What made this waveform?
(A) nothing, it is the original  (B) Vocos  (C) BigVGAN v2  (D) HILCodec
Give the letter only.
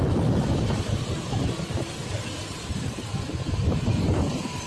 C